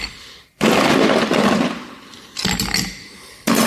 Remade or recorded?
recorded